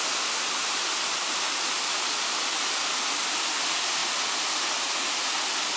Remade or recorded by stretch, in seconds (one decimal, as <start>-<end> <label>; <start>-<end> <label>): 0.0-5.8 recorded